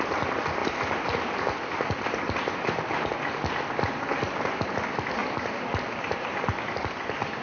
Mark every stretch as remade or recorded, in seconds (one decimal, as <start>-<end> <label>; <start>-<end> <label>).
0.0-5.2 recorded; 5.2-6.6 remade; 6.6-7.4 recorded